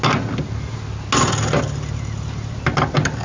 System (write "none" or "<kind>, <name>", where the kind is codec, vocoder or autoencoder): none